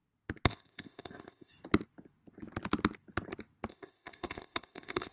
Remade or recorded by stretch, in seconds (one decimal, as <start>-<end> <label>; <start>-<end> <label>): 0.0-0.5 recorded; 0.5-1.5 remade; 1.5-3.7 recorded; 3.7-5.1 remade